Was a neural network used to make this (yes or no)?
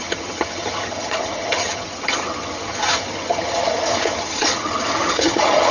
yes